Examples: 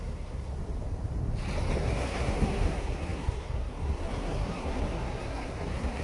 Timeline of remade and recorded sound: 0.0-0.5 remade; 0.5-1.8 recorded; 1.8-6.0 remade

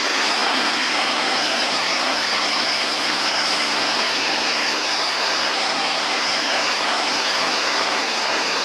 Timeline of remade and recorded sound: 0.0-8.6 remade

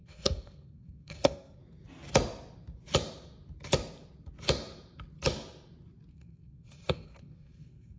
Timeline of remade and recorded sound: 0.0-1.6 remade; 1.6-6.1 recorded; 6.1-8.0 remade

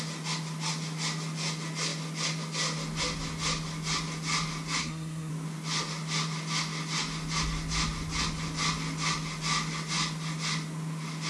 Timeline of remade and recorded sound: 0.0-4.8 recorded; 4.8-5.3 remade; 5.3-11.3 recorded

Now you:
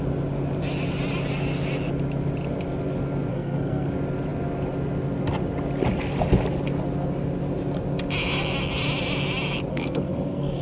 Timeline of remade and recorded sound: 0.0-3.3 recorded; 3.3-3.9 remade; 3.9-9.7 recorded; 9.7-10.6 remade

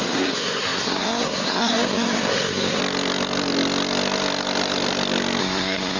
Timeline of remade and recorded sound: 0.0-2.8 remade; 2.8-5.4 recorded; 5.4-6.0 remade